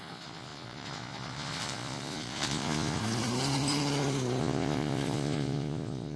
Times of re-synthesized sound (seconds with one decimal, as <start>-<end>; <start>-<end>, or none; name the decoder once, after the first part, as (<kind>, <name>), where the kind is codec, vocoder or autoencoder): 0.0-3.0 (vocoder, Vocos); 4.4-6.2